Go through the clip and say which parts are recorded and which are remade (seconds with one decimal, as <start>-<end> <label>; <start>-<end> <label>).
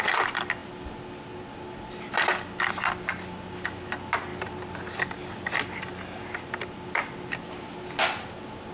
0.0-8.7 recorded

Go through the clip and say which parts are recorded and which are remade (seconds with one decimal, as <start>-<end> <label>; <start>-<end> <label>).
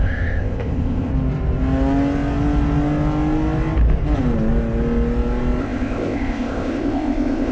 0.0-1.1 remade; 1.1-5.6 recorded; 5.6-7.5 remade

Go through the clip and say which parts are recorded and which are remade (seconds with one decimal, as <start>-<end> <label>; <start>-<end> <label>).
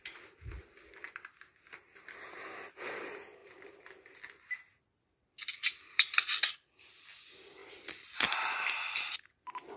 0.0-9.8 recorded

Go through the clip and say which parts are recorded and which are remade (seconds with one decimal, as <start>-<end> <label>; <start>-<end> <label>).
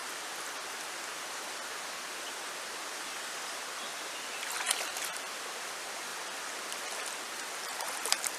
0.0-8.4 recorded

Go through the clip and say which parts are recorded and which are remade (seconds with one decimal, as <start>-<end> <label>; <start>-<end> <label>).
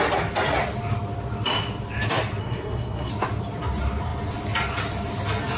0.0-2.4 recorded; 2.4-3.1 remade; 3.1-5.6 recorded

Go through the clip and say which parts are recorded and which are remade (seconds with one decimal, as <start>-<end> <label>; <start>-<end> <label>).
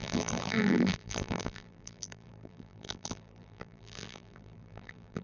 0.0-5.2 remade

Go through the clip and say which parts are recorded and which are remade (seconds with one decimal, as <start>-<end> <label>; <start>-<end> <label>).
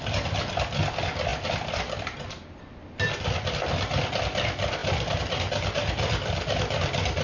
0.0-7.2 recorded